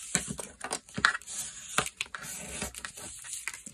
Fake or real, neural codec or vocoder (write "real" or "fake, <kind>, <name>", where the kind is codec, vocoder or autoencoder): real